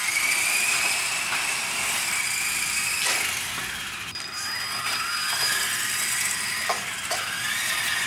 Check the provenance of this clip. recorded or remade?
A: recorded